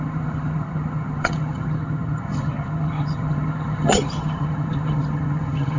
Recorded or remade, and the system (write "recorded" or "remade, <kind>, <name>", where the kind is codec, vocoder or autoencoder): remade, vocoder, HiFi-GAN